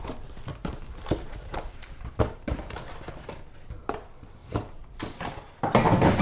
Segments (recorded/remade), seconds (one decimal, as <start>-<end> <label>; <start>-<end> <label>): 0.0-0.5 recorded; 0.5-2.8 remade; 2.8-4.4 recorded; 4.4-5.0 remade; 5.0-6.2 recorded